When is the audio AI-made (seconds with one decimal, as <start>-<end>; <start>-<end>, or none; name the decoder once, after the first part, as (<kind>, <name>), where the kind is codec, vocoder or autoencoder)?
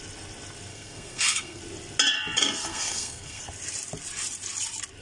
0.7-1.6 (codec, SNAC); 2.7-3.4